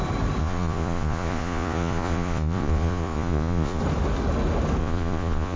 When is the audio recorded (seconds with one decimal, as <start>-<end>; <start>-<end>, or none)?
0.0-0.4; 3.8-4.8